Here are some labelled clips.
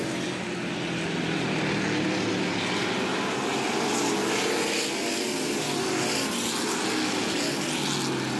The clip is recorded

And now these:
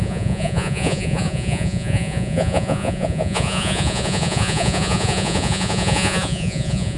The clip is remade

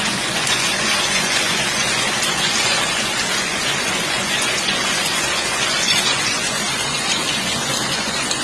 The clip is remade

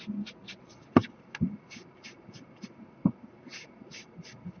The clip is recorded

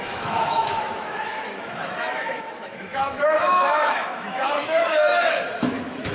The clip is remade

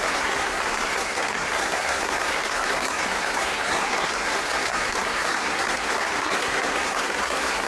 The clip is remade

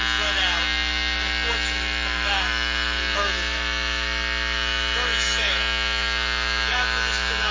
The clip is remade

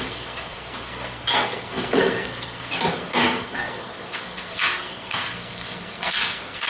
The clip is remade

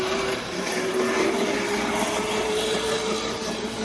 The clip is recorded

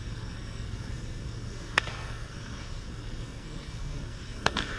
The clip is remade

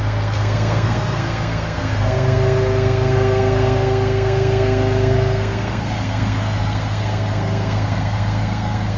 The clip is remade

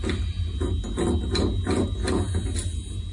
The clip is recorded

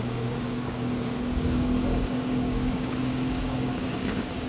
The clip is remade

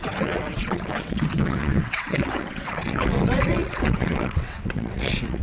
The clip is remade